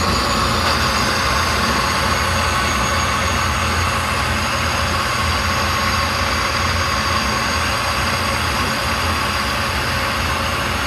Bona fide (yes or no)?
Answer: yes